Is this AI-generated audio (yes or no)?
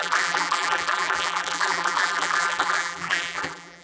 yes